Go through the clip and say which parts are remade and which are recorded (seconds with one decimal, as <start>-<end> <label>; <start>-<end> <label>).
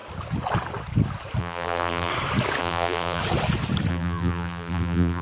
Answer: 0.0-1.4 recorded; 1.4-2.1 remade; 2.1-2.6 recorded; 2.6-3.2 remade; 3.2-3.9 recorded; 3.9-5.2 remade